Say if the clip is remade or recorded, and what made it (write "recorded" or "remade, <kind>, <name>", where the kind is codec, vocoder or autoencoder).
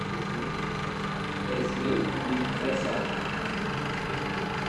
recorded